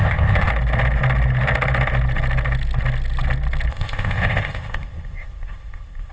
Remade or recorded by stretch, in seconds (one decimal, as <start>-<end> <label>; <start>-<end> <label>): 0.0-0.5 remade; 0.5-3.7 recorded; 3.7-6.1 remade